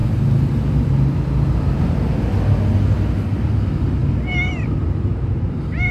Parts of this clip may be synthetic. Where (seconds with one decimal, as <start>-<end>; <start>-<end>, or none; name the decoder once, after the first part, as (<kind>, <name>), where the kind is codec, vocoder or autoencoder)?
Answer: 3.5-5.9 (vocoder, BigVGAN v2)